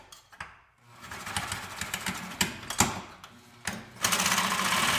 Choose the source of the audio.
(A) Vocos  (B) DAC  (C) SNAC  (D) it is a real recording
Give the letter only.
D